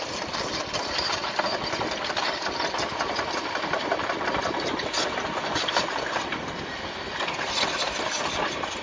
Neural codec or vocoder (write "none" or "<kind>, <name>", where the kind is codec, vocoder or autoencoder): vocoder, BigVGAN v2